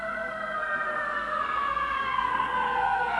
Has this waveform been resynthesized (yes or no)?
yes